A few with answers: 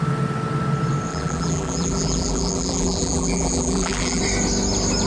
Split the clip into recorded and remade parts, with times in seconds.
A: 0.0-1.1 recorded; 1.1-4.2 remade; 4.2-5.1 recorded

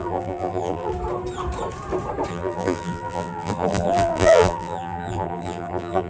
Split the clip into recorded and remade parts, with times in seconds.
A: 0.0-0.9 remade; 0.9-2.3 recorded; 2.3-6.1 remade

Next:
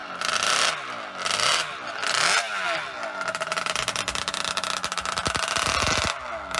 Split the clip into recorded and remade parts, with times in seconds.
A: 0.0-6.6 recorded

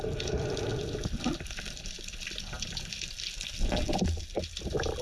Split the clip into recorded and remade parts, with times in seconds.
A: 0.0-0.7 recorded; 0.7-2.9 remade; 2.9-5.0 recorded

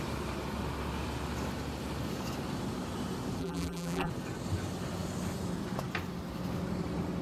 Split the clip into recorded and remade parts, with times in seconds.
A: 0.0-3.4 recorded; 3.4-4.1 remade; 4.1-7.2 recorded

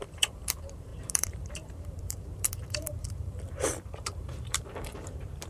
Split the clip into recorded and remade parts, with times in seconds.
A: 0.0-5.5 remade